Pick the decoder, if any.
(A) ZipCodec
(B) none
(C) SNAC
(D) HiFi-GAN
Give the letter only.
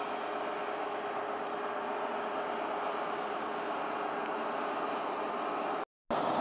B